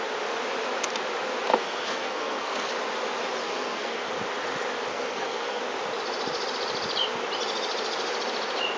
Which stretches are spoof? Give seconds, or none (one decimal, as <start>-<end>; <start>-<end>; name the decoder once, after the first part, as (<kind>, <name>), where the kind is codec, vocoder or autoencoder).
1.5-2.7 (codec, SNAC); 3.4-4.1; 4.9-5.6